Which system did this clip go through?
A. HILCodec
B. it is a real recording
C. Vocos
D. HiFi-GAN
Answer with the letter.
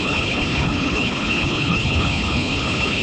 A